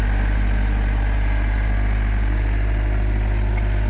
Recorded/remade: recorded